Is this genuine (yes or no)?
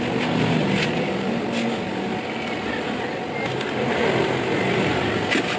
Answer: yes